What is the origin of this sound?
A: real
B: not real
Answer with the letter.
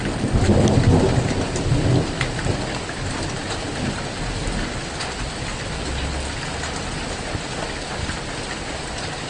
A